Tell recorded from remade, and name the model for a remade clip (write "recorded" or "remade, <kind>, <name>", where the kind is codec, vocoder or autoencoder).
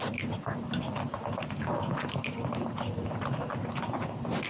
recorded